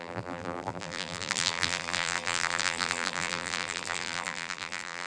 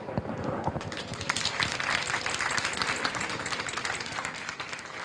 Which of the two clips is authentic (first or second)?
second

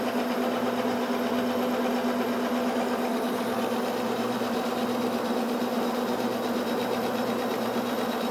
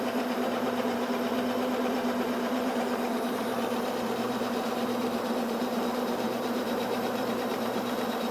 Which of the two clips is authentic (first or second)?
first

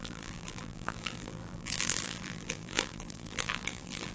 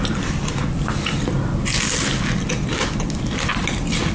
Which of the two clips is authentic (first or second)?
second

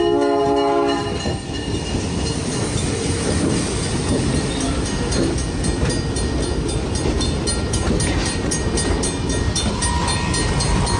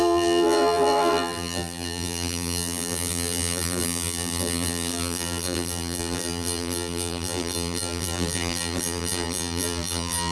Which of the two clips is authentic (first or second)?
first